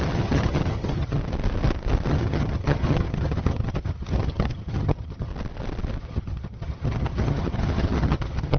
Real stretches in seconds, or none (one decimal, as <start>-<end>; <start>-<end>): 1.2-2.1; 5.3-6.0